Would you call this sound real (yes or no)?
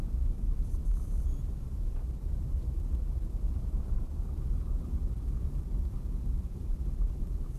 no